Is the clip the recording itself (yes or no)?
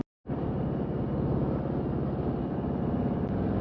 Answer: yes